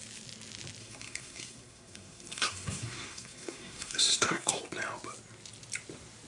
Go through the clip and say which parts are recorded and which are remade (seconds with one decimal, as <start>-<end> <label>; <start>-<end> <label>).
0.0-0.8 recorded; 0.8-4.6 remade; 4.6-6.3 recorded